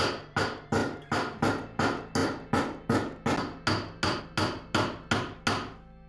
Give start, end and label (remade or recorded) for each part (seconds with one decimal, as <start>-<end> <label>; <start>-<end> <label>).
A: 0.0-0.8 recorded; 0.8-1.4 remade; 1.4-6.1 recorded